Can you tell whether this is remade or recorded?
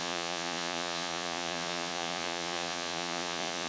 remade